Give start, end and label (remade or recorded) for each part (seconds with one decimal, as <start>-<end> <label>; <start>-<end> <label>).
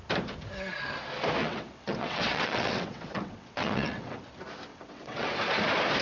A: 0.0-1.4 recorded; 1.4-4.2 remade; 4.2-4.7 recorded; 4.7-5.4 remade; 5.4-6.0 recorded